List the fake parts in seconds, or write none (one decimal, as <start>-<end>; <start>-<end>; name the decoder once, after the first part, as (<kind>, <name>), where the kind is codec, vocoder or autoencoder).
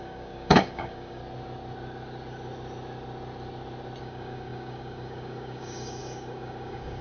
0.0-1.2 (codec, DAC); 4.0-7.0